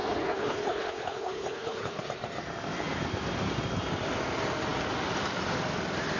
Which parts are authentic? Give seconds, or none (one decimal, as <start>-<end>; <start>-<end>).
2.0-6.2